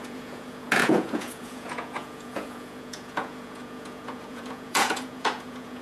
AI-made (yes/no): yes